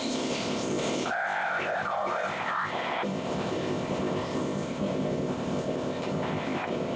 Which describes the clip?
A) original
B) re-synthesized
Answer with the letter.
B